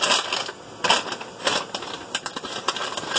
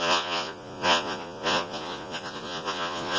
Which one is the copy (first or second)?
second